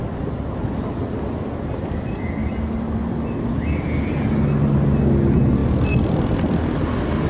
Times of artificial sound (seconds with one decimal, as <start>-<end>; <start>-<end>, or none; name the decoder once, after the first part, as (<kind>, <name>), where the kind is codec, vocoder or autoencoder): none